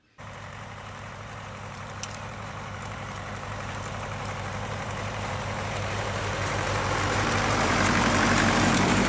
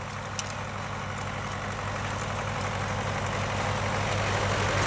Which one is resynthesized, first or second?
first